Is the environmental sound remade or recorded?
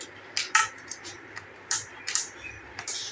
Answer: remade